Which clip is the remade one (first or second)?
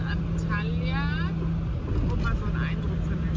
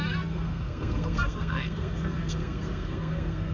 second